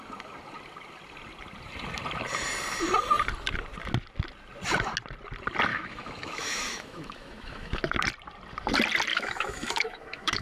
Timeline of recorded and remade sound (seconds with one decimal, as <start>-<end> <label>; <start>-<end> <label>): 0.0-5.7 recorded; 5.7-7.8 remade; 7.8-9.1 recorded; 9.1-10.4 remade